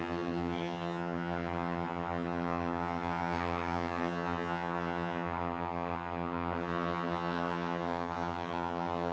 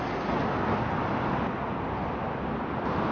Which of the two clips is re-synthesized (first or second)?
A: first